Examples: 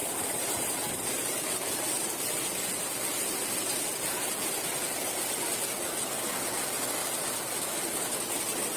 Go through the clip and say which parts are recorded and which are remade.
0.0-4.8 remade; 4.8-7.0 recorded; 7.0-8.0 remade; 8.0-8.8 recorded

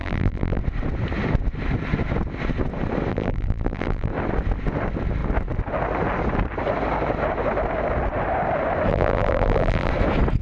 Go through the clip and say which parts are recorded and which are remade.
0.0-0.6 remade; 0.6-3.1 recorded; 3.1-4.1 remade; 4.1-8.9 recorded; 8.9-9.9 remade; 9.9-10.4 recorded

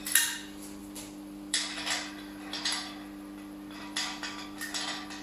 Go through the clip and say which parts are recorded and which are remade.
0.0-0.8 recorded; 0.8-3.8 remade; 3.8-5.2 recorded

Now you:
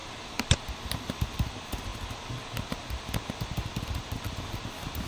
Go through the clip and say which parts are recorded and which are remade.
0.0-5.1 recorded

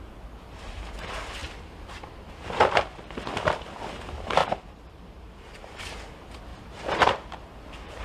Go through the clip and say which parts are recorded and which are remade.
0.0-1.4 recorded; 1.4-2.3 remade; 2.3-4.4 recorded; 4.4-5.8 remade; 5.8-6.5 recorded; 6.5-8.0 remade

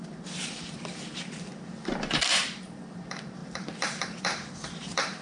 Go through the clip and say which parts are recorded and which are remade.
0.0-5.2 remade

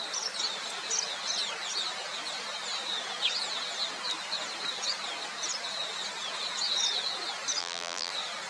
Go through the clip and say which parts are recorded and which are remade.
0.0-7.6 recorded; 7.6-8.1 remade; 8.1-8.5 recorded